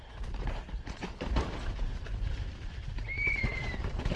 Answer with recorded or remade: remade